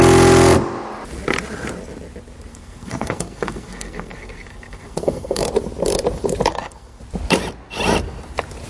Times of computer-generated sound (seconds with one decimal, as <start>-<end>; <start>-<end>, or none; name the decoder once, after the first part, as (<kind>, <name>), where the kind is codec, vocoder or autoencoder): 2.5-5.5 (codec, SNAC); 6.5-7.0